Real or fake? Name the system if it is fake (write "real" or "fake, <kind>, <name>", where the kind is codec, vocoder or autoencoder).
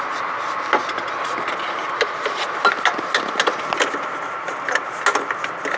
real